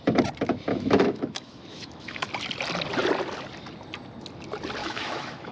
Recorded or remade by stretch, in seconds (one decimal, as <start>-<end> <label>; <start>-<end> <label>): 0.0-0.7 recorded; 0.7-2.3 remade; 2.3-4.8 recorded; 4.8-5.5 remade